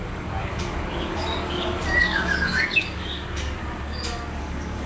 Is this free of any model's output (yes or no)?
no